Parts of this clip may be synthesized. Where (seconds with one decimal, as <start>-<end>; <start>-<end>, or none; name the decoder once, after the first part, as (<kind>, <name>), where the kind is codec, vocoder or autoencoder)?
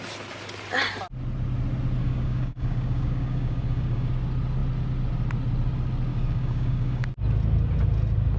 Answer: 2.0-4.1 (codec, DAC); 6.1-7.1